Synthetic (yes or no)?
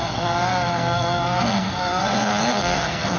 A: yes